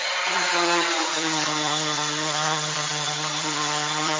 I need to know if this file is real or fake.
fake